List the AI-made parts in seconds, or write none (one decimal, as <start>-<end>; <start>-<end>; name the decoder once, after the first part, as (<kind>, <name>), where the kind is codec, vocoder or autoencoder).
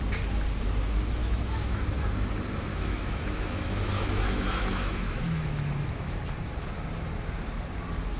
1.2-1.8 (autoencoder, DAC-VAE); 2.7-6.2